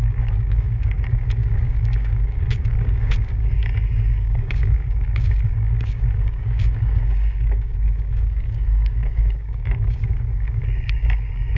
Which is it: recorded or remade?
remade